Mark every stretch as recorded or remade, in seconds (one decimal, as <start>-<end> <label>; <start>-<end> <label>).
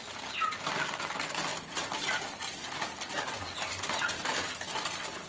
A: 0.0-5.3 recorded